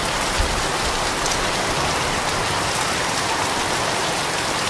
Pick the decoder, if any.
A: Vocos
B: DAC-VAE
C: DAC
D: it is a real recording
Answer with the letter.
D